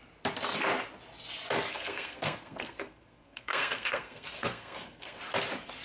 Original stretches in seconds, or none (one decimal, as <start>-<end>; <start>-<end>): 0.0-1.7; 5.2-5.8